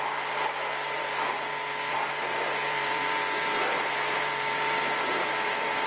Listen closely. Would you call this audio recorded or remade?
remade